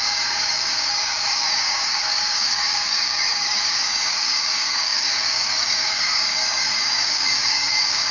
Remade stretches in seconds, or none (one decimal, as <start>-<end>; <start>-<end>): 0.0-8.1